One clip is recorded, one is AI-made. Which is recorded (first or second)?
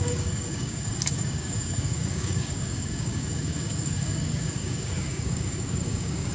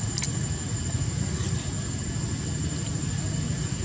second